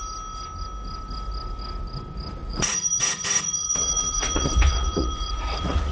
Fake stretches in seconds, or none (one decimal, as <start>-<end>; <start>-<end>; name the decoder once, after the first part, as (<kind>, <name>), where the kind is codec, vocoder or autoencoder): 2.4-5.9 (vocoder, Vocos)